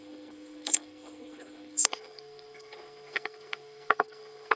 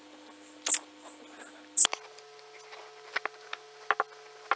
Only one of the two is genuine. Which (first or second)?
second